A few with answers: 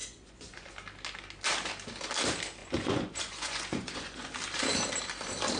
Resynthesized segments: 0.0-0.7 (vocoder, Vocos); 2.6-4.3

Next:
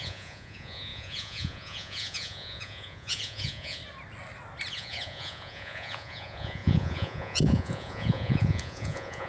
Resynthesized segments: 0.0-3.8 (vocoder, Vocos); 4.7-9.3

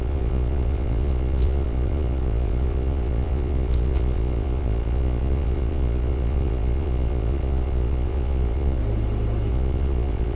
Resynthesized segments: 0.0-8.8 (vocoder, Vocos); 9.5-10.4

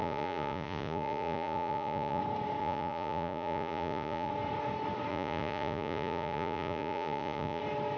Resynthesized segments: 0.0-2.2 (vocoder, Vocos); 2.6-4.3; 5.1-7.6

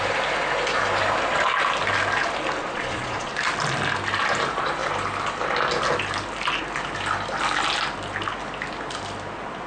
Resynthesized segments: 2.6-3.3 (vocoder, Vocos)

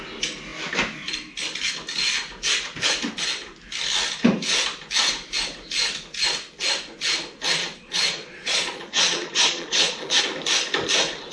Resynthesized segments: 7.6-10.2 (vocoder, Vocos)

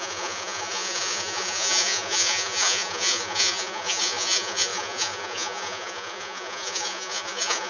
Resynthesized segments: 0.0-7.7 (vocoder, Vocos)

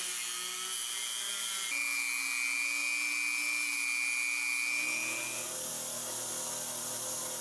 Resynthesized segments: none